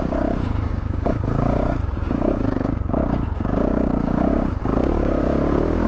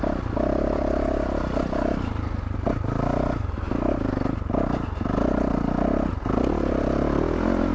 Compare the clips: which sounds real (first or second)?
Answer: second